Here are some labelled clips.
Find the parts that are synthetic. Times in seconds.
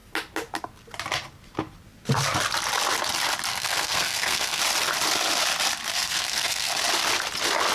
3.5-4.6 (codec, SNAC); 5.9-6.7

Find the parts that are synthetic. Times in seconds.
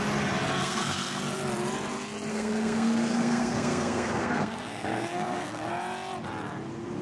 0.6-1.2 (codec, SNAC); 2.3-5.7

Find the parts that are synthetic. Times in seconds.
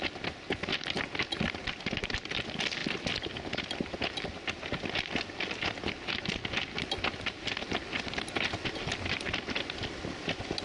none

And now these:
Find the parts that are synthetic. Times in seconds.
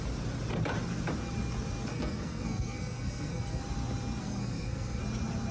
1.9-3.6 (codec, SNAC); 4.2-5.0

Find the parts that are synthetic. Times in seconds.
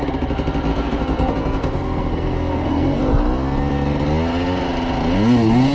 0.7-3.0 (codec, SNAC)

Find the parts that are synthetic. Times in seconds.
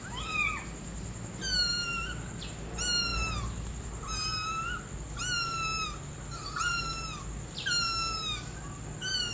none